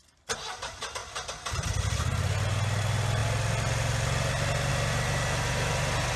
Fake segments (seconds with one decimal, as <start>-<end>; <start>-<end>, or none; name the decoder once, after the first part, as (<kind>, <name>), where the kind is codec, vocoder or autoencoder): none